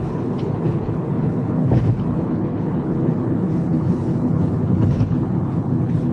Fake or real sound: fake